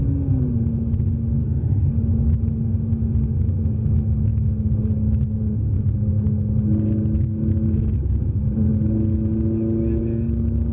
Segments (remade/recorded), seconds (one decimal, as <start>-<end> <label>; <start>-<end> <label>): 0.0-1.4 recorded; 1.4-1.9 remade; 1.9-10.7 recorded